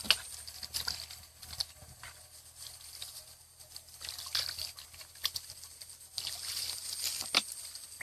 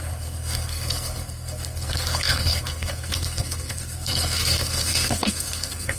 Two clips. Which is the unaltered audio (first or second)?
first